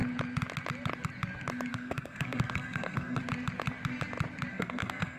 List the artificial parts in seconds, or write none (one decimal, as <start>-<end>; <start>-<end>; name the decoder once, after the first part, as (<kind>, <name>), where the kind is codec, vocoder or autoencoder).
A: 1.7-3.2 (codec, SNAC); 4.5-5.2